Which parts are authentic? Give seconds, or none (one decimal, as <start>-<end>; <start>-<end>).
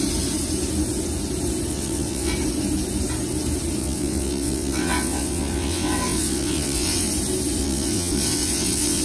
0.0-1.7; 2.3-3.8; 7.1-7.6